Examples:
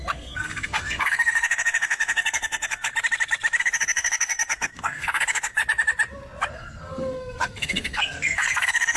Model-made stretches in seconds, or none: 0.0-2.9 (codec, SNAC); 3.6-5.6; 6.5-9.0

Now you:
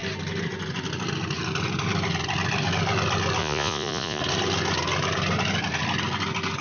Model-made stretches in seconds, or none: 3.4-4.2 (vocoder, Vocos)

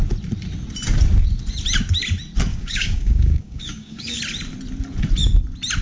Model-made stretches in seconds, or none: 2.5-4.2 (codec, DAC)